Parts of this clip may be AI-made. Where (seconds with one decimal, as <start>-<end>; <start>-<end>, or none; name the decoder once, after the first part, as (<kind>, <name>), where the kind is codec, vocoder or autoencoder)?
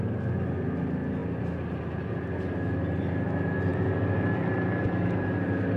none